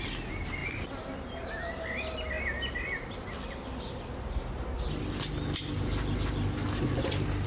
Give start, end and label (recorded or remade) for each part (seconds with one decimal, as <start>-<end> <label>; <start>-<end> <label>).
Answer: 0.0-7.5 recorded